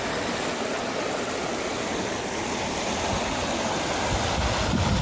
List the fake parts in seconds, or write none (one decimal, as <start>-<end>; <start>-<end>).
none